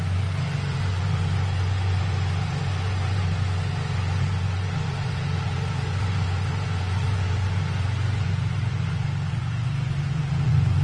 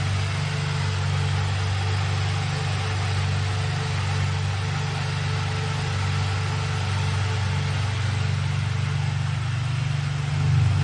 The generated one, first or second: first